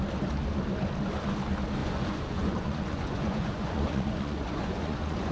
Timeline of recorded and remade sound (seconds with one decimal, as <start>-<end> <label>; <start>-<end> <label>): 0.0-1.8 recorded; 1.8-5.3 remade